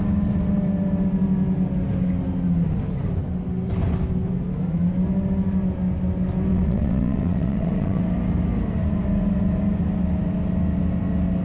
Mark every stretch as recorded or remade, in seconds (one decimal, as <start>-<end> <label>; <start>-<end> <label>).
0.0-6.5 recorded; 6.5-8.0 remade; 8.0-11.4 recorded